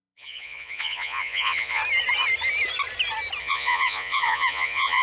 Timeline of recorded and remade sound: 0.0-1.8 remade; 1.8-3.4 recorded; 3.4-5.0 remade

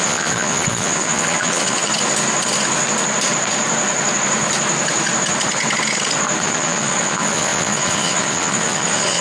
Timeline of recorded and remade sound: 0.0-1.9 remade; 1.9-6.4 recorded; 6.4-9.2 remade